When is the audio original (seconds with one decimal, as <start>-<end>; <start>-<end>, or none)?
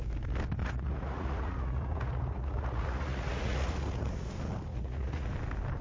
0.0-0.6; 4.1-4.7; 5.3-5.8